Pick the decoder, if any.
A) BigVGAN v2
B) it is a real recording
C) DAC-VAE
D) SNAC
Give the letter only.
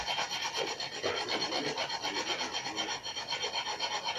B